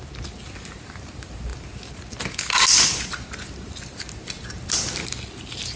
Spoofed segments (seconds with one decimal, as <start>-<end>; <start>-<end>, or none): none